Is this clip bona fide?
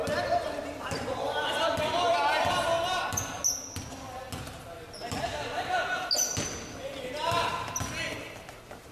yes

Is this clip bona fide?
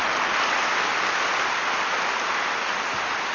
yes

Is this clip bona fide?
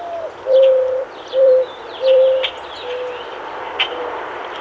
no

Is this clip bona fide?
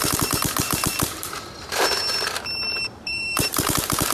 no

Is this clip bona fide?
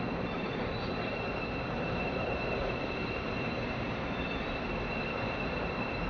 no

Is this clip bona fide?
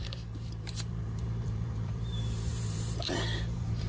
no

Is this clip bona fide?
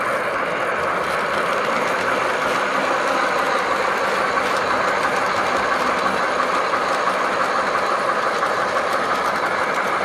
yes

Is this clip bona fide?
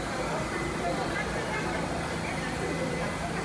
no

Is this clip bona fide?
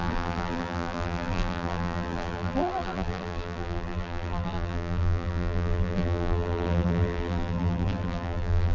no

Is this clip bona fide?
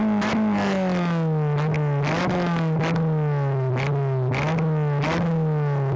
yes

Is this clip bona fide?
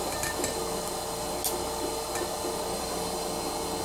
yes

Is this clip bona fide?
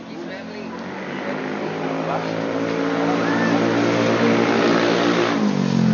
yes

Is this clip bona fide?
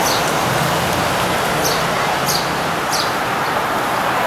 yes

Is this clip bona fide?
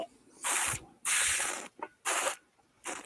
no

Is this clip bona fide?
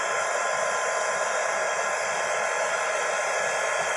yes